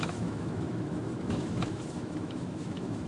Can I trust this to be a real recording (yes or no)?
no